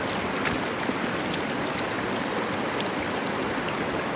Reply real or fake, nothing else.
real